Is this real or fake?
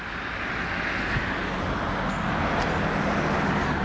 real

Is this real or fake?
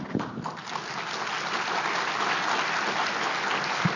real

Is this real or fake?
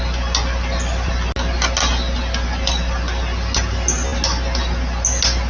real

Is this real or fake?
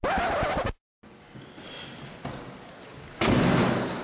real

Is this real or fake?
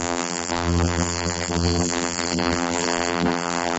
fake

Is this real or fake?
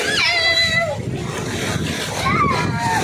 real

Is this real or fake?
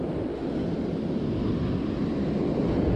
real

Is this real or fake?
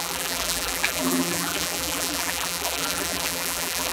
fake